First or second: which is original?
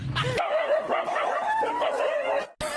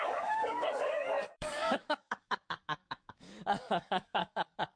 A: first